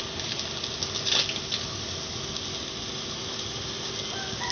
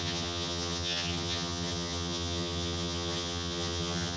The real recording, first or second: first